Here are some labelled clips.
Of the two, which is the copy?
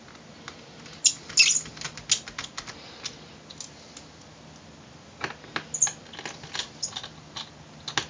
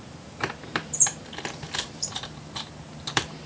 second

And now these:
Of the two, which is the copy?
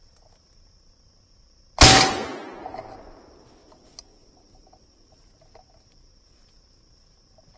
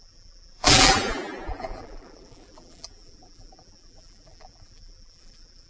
second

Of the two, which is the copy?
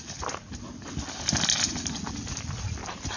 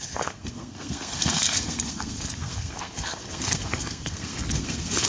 second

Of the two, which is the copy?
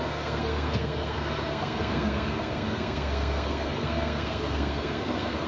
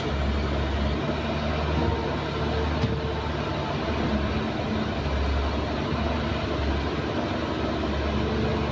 first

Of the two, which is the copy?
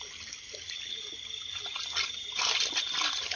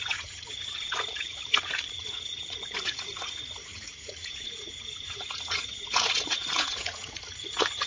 second